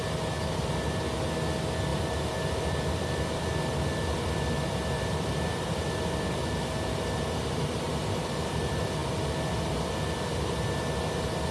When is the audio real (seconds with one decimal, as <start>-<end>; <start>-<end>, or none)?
0.0-1.9; 6.5-11.5